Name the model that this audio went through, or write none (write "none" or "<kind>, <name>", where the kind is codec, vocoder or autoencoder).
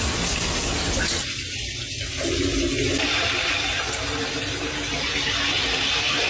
none